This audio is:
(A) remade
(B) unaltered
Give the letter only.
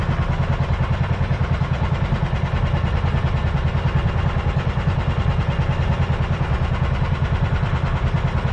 B